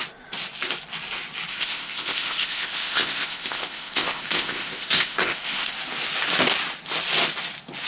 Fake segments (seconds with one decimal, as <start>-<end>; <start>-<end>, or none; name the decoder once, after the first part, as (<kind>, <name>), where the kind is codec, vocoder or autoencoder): 1.5-5.7 (codec, ZipCodec)

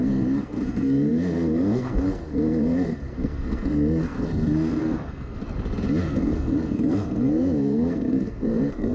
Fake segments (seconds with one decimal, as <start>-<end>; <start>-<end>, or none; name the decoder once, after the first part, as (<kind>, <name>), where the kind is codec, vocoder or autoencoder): 0.0-5.4 (codec, SNAC); 6.0-8.9

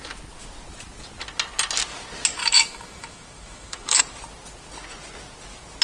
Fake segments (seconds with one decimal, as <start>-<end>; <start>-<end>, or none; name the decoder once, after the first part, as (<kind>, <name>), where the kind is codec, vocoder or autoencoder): 2.4-4.0 (autoencoder, DAC-VAE)

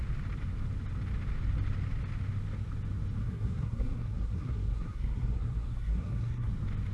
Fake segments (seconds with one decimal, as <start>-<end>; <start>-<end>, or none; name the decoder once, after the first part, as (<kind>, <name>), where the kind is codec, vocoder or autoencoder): 3.2-6.5 (codec, SNAC)

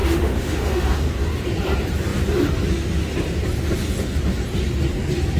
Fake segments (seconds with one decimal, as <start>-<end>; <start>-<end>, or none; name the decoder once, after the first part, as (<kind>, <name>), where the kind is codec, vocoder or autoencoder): 0.0-1.1 (autoencoder, DAC-VAE)

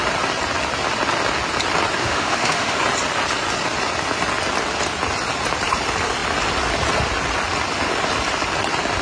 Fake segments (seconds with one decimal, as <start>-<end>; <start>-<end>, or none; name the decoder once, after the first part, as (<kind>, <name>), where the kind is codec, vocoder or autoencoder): 2.0-2.8 (autoencoder, DAC-VAE)